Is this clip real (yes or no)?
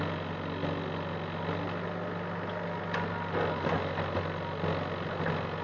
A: yes